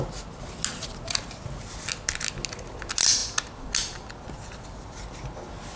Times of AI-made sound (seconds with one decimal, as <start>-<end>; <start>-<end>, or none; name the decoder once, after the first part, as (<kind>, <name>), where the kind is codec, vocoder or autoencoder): none